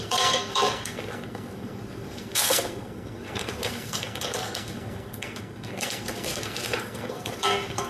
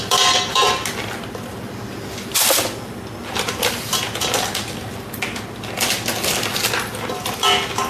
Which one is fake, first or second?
first